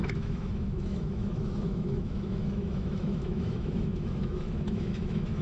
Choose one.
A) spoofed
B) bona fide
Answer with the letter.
A